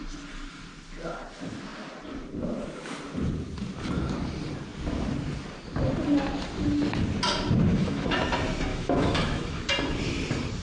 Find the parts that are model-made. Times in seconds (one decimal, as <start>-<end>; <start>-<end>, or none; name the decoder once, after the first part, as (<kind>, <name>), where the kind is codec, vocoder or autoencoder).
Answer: 7.7-8.2 (autoencoder, DAC-VAE); 8.7-9.6